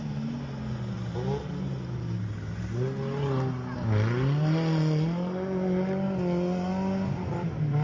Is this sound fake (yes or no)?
no